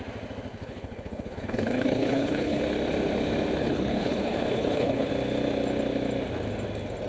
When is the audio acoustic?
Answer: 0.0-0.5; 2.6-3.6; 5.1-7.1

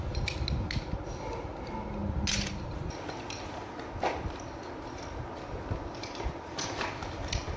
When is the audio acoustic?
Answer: 0.0-7.6

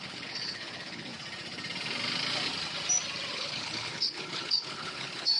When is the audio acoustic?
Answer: 1.1-3.3